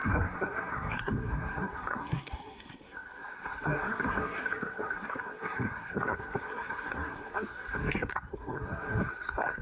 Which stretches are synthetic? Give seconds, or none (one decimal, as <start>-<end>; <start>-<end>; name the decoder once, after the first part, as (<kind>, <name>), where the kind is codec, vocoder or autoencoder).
0.0-9.6 (codec, SNAC)